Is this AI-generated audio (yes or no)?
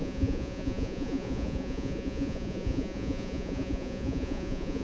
yes